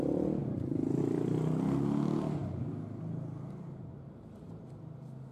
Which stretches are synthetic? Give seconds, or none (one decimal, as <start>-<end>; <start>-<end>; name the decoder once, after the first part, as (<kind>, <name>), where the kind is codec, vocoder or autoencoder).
0.4-1.0 (vocoder, BigVGAN v2)